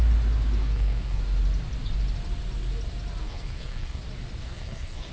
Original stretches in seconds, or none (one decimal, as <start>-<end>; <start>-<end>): 0.0-0.6; 1.2-3.2; 4.0-4.4